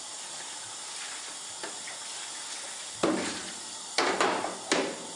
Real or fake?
real